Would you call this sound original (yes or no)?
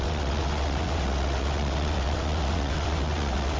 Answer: no